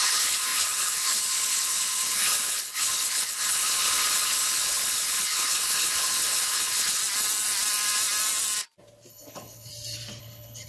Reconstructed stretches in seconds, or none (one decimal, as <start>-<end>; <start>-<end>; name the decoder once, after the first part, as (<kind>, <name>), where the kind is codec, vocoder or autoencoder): 0.0-7.0 (codec, HILCodec); 9.1-9.7; 10.2-10.7